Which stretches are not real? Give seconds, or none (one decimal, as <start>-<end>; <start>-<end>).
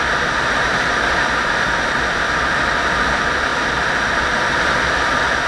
none